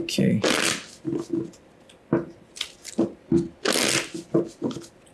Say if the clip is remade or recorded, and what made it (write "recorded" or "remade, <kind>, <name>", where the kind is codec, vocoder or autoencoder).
recorded